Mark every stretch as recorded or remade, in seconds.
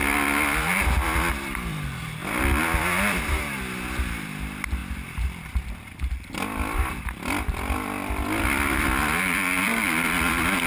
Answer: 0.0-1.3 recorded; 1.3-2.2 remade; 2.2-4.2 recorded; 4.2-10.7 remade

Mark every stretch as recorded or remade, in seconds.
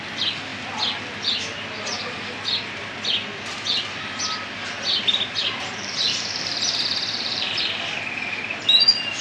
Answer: 0.0-5.4 recorded; 5.4-7.5 remade; 7.5-9.2 recorded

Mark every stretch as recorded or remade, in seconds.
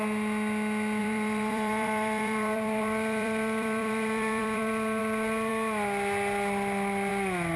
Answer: 0.0-1.0 recorded; 1.0-5.0 remade; 5.0-7.6 recorded